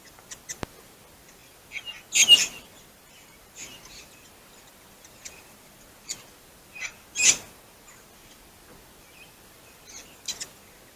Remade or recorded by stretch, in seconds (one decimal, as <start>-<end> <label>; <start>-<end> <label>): 0.0-11.0 recorded